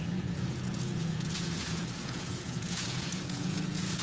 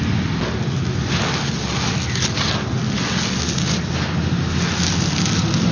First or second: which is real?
second